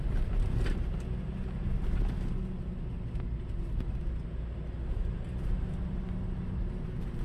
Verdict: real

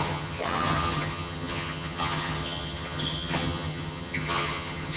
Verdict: fake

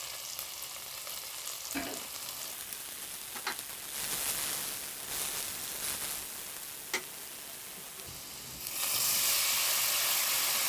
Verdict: real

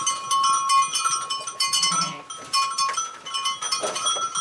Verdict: real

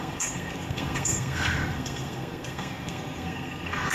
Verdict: fake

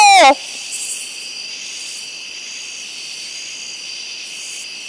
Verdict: real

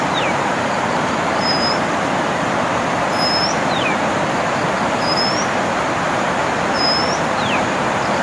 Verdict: fake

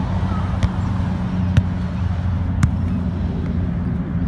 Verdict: real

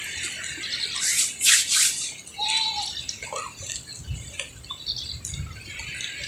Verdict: real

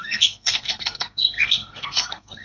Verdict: fake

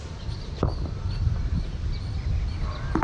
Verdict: real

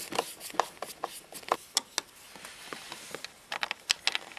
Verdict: real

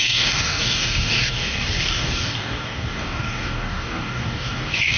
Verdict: fake